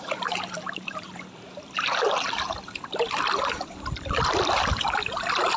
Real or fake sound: fake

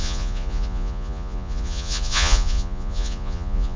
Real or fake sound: fake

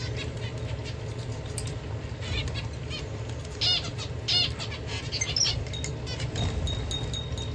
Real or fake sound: real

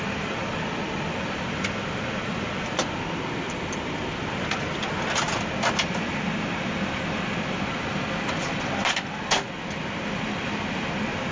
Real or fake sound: real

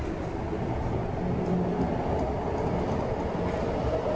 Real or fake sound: real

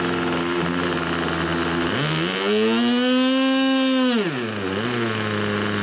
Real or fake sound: real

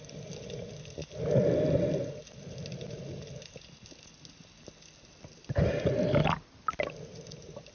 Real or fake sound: real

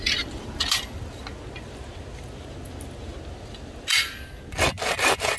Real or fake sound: real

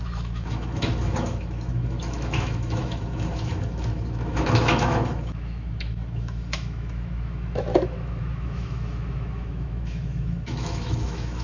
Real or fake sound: fake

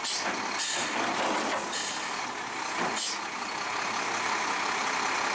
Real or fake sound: real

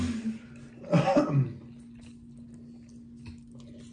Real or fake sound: real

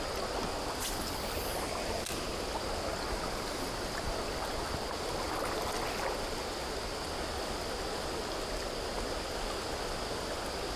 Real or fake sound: real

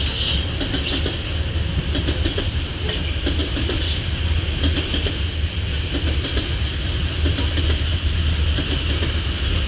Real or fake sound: real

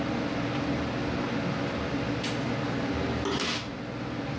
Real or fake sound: real